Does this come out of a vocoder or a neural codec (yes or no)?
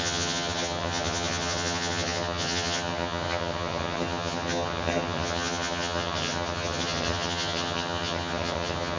yes